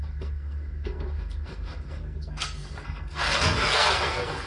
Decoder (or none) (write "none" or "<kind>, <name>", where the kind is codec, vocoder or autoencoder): codec, SNAC